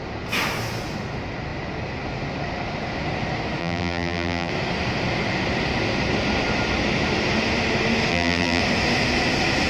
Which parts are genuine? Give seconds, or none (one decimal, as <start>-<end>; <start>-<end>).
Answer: 0.0-3.6; 4.5-8.1; 8.6-9.7